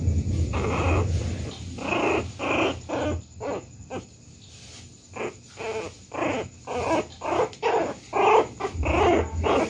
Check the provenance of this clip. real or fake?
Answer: real